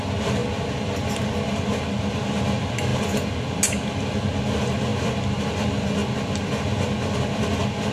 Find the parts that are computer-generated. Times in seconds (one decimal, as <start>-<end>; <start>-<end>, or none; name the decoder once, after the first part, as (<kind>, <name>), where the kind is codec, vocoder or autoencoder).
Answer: none